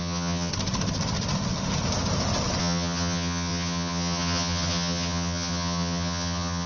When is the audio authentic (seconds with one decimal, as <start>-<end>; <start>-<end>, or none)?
0.5-2.6